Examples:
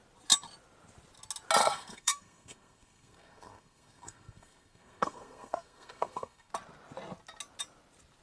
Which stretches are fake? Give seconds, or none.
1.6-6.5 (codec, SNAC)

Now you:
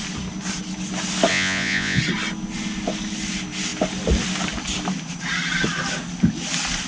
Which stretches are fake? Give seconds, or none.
1.3-2.0 (vocoder, Vocos)

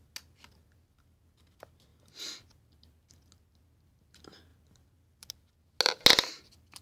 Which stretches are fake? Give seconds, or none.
none

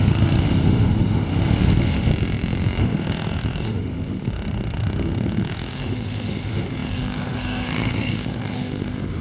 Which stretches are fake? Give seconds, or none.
0.0-2.1 (autoencoder, DAC-VAE); 2.8-9.2

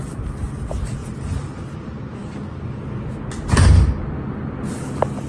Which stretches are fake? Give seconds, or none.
1.0-1.6 (vocoder, BigVGAN v2)

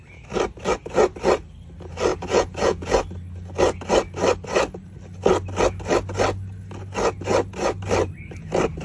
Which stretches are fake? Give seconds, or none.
2.1-3.0 (vocoder, Vocos)